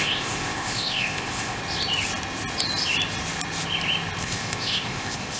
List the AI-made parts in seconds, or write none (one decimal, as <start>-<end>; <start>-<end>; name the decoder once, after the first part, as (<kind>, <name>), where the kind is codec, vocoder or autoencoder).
0.0-1.6 (codec, ZipCodec); 4.2-5.4